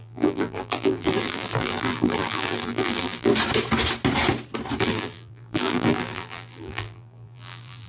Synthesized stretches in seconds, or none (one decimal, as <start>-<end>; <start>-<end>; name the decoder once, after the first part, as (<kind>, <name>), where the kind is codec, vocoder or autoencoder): 0.0-3.3 (vocoder, BigVGAN v2); 4.8-7.9